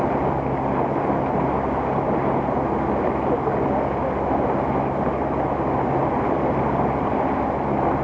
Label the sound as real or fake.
real